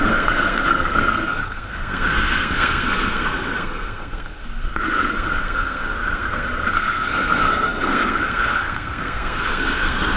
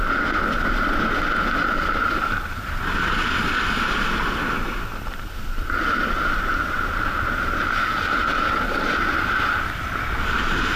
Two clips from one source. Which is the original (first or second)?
second